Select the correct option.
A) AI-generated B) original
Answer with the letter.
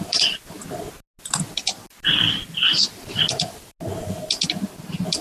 B